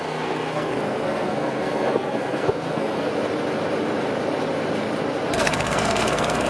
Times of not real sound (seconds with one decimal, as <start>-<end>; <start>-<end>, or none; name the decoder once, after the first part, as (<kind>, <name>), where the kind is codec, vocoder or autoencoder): 0.0-3.1 (codec, SNAC); 5.3-6.5